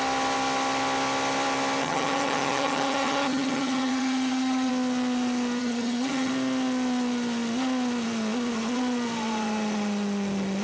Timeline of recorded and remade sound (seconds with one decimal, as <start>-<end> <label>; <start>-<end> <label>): 0.0-1.8 recorded; 1.8-4.7 remade; 4.7-5.6 recorded; 5.6-6.3 remade; 6.3-10.6 recorded